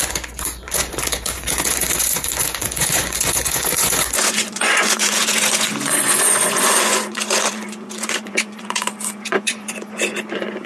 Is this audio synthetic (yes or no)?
yes